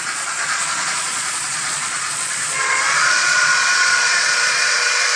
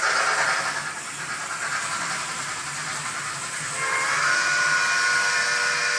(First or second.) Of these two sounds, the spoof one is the first